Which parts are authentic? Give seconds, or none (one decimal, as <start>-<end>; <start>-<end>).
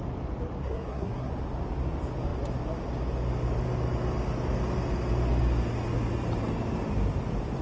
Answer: 0.0-0.6; 1.3-7.6